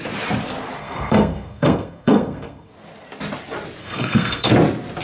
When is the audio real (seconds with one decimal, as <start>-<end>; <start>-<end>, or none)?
0.0-0.8; 2.7-3.8; 4.5-5.0